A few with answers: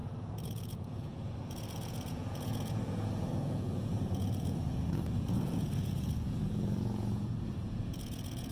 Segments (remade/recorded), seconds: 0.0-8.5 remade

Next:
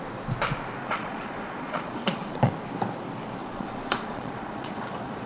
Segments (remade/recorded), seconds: 0.0-0.8 recorded; 0.8-2.5 remade; 2.5-3.4 recorded; 3.4-5.3 remade

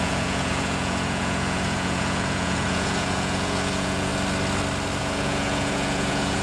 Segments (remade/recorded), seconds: 0.0-4.1 remade; 4.1-5.0 recorded; 5.0-6.4 remade